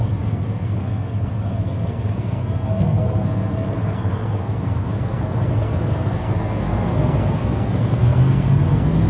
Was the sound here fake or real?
fake